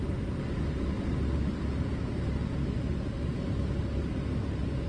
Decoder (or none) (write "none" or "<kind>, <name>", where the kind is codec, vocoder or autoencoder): none